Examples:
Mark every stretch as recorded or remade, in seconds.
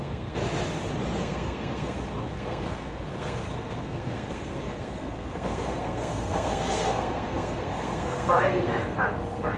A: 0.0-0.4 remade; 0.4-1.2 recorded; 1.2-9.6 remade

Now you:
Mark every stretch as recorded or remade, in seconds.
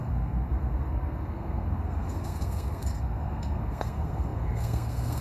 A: 0.0-5.2 remade